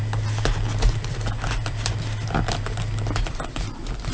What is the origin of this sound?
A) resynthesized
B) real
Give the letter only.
A